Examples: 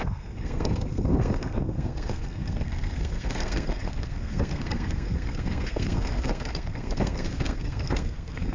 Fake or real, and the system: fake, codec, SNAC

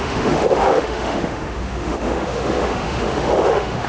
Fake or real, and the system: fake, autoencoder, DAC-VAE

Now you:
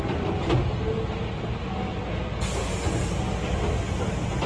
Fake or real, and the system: real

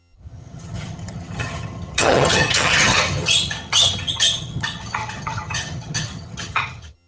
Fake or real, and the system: fake, vocoder, HiFi-GAN